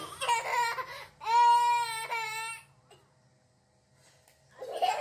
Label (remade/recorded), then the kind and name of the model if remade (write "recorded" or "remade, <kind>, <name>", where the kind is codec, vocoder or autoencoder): recorded